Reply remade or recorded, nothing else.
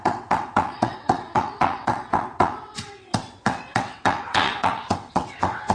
remade